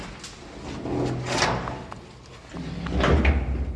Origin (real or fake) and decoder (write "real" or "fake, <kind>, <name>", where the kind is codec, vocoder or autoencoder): real